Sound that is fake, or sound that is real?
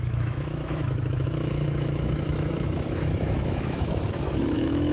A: fake